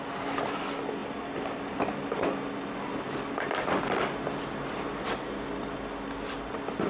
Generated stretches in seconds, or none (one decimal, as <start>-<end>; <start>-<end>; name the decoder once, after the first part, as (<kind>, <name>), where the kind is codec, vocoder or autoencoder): none